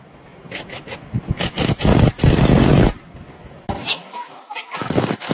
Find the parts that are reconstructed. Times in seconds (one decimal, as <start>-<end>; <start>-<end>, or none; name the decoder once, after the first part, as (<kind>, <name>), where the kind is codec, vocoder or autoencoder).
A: 0.0-1.9 (autoencoder, DAC-VAE); 3.1-5.3